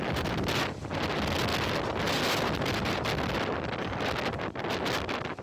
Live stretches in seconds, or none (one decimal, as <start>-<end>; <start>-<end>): 0.0-5.4